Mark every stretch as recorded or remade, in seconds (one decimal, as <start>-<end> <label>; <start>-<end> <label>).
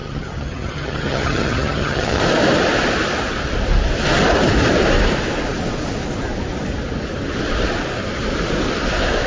0.0-2.2 remade; 2.2-9.3 recorded